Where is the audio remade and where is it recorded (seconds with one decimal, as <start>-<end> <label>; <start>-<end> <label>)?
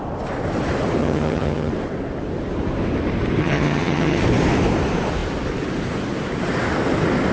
0.0-1.0 recorded; 1.0-1.7 remade; 1.7-3.4 recorded; 3.4-4.2 remade; 4.2-7.3 recorded